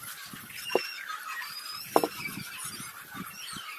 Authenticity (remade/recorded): recorded